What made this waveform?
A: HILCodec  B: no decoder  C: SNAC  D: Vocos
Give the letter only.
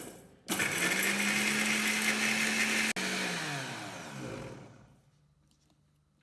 B